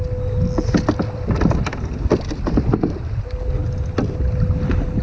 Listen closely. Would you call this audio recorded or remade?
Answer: recorded